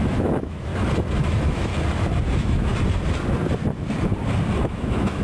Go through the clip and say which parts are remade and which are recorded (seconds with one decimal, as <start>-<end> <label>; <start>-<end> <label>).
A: 0.0-0.7 remade; 0.7-1.2 recorded; 1.2-1.7 remade; 1.7-2.3 recorded; 2.3-2.7 remade; 2.7-4.6 recorded; 4.6-5.2 remade